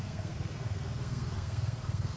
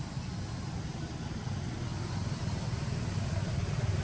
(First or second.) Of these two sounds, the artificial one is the first